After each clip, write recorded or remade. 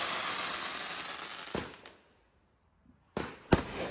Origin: recorded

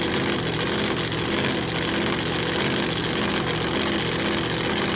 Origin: recorded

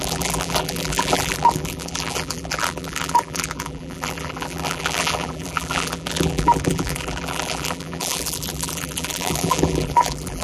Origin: remade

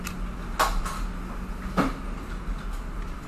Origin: recorded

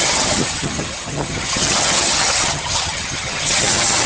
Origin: remade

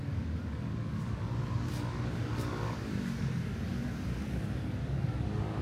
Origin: remade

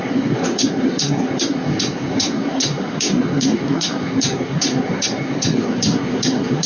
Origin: remade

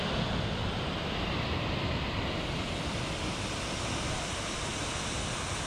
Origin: recorded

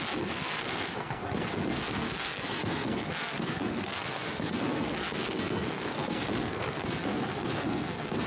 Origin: remade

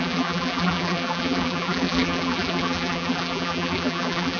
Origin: remade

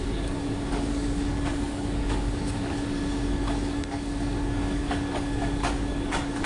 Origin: remade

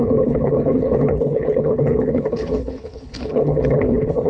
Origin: remade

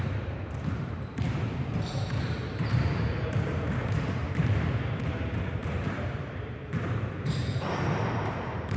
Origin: remade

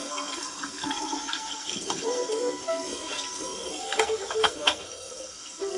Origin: remade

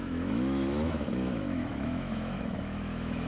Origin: remade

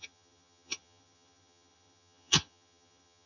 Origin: remade